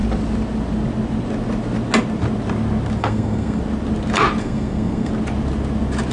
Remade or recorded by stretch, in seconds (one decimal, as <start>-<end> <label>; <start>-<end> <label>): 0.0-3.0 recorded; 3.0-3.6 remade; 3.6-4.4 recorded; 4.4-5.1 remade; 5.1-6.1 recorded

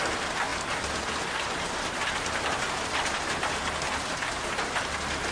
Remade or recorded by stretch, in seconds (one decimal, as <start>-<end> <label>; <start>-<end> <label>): 0.0-5.3 recorded

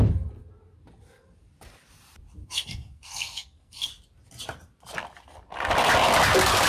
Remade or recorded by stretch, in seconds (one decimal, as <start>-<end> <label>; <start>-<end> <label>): 0.0-2.4 recorded; 2.4-3.9 remade; 3.9-6.7 recorded